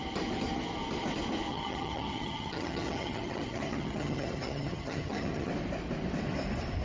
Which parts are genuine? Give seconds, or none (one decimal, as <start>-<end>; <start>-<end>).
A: 0.0-1.5; 5.5-6.8